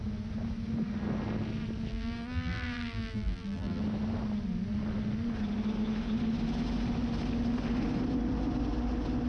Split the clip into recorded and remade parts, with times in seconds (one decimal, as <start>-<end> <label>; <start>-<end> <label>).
0.0-1.9 recorded; 1.9-3.8 remade; 3.8-9.3 recorded